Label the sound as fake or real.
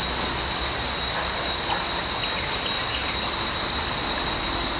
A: real